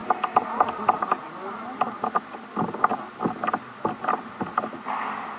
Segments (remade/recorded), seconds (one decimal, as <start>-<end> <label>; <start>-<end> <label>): 0.0-5.4 recorded